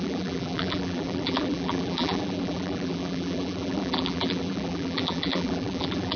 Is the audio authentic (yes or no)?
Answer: no